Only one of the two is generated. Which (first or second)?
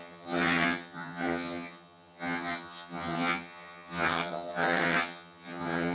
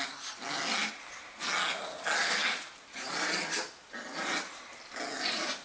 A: first